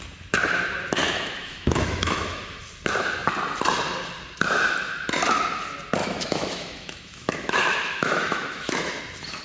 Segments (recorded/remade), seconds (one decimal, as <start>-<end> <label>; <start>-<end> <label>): 0.0-1.0 recorded; 1.0-2.6 remade; 2.6-6.0 recorded; 6.0-9.0 remade; 9.0-9.4 recorded